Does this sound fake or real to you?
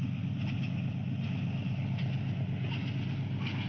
real